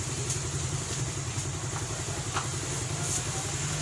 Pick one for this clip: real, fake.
real